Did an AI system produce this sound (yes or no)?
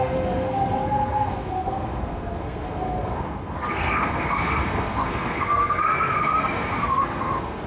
yes